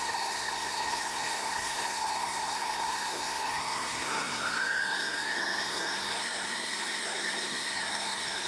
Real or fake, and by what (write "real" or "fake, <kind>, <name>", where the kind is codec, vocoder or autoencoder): fake, codec, SNAC